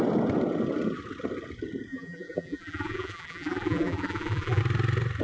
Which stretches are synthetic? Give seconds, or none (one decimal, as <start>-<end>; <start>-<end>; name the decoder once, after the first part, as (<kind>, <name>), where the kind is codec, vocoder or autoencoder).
1.9-4.6 (vocoder, BigVGAN v2)